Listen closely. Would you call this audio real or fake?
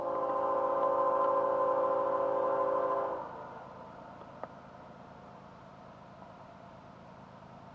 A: real